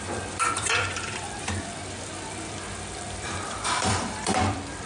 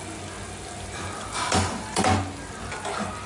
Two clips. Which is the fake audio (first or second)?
first